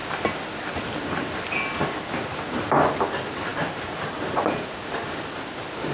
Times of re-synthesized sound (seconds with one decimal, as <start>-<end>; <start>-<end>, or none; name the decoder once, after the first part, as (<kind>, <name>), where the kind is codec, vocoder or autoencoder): none